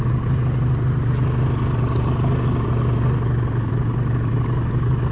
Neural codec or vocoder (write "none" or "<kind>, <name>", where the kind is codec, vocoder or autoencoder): none